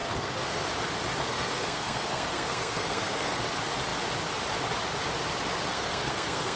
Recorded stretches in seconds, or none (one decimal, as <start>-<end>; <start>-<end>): 0.6-1.3; 3.4-5.7